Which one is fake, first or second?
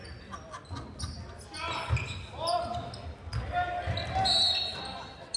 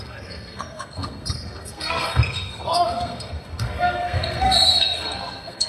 second